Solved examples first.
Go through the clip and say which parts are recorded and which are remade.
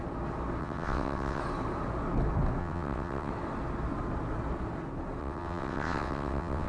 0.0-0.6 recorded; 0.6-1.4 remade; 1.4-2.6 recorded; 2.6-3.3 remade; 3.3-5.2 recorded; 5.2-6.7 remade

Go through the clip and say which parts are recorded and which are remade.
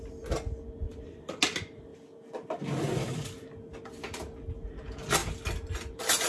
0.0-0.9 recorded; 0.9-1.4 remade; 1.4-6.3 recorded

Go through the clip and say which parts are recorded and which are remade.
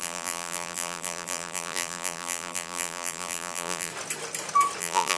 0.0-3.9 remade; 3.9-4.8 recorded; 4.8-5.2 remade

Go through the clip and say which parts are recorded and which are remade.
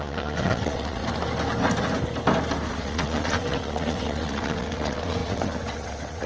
0.0-1.0 remade; 1.0-2.7 recorded; 2.7-6.3 remade